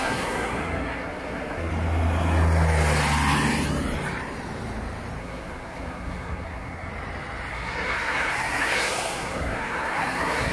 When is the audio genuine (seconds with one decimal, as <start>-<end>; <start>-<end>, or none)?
1.7-5.2; 6.9-7.5